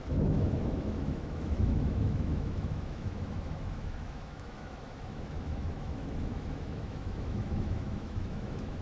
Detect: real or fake fake